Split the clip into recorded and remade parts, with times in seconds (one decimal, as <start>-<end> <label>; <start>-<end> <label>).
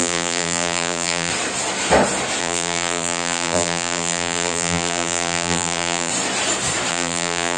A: 0.0-1.3 remade; 1.3-2.4 recorded; 2.4-6.1 remade; 6.1-6.9 recorded; 6.9-7.6 remade